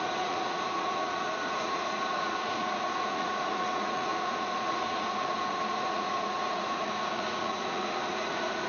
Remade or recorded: remade